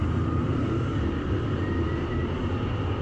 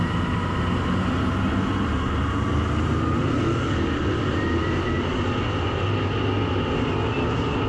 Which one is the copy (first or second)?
first